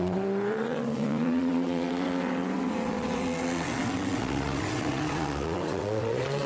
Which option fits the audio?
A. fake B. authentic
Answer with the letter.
A